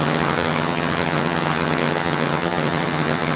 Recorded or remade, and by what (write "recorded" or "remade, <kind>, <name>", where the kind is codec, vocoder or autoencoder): remade, vocoder, HiFi-GAN